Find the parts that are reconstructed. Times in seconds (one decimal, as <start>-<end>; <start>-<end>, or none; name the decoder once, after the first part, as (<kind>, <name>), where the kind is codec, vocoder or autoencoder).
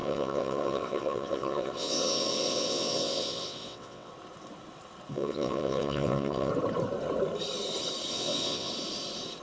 0.0-4.1 (vocoder, WaveNeXt); 5.1-6.5; 8.1-8.7